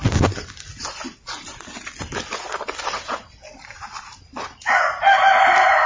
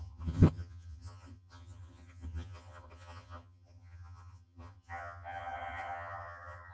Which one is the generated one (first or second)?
second